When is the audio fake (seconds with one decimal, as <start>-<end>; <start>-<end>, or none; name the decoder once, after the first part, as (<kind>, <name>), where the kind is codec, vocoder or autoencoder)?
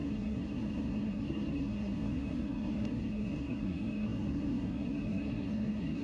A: 0.0-6.0 (codec, SNAC)